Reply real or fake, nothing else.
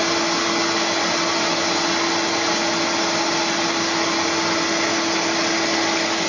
real